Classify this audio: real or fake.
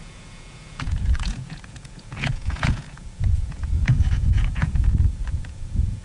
fake